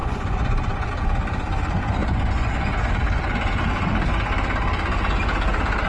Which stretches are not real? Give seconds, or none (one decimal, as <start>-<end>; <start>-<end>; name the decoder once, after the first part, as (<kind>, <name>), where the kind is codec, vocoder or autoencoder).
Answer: 0.0-0.9 (vocoder, Vocos); 2.0-2.9